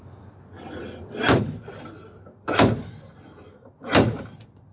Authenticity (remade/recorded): remade